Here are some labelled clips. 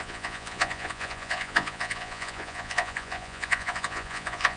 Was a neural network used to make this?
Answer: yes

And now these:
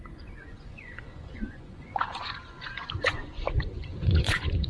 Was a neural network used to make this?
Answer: yes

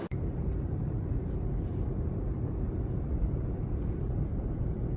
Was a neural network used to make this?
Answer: no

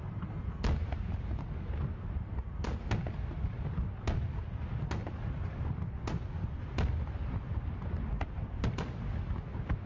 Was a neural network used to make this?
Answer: no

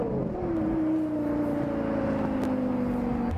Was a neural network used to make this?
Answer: no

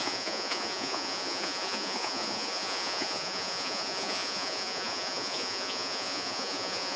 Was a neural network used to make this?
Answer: yes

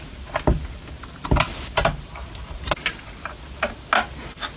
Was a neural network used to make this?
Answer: no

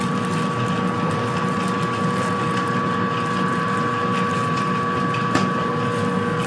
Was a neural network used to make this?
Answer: no